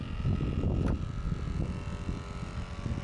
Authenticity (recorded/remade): recorded